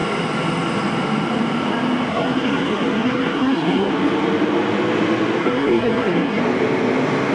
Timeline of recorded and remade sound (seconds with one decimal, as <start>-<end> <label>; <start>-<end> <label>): 0.0-2.1 recorded; 2.1-3.9 remade; 3.9-5.4 recorded; 5.4-6.4 remade; 6.4-7.3 recorded